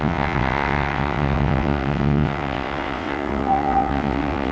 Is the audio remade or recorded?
remade